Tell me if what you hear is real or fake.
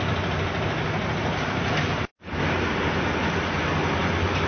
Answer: real